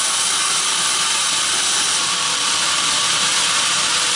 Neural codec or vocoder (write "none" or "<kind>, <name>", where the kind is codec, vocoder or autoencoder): none